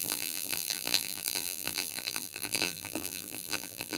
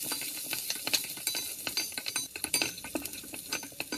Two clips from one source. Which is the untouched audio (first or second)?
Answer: second